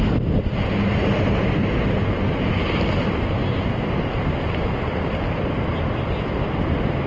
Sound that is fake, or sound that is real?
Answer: real